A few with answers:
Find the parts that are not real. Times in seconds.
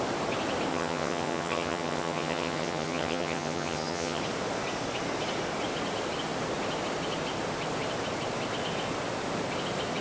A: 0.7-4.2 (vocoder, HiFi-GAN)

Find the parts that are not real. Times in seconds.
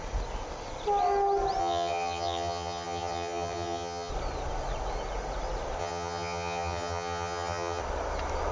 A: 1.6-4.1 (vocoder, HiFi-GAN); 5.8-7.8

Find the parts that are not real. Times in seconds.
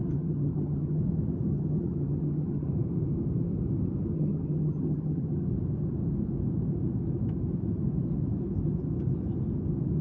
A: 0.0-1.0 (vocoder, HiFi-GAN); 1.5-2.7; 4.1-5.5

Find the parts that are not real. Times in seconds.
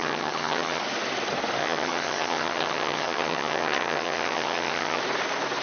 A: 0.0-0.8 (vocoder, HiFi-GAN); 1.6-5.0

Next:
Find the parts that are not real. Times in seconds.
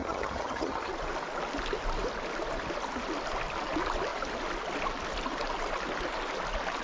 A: 0.0-0.9 (vocoder, HiFi-GAN)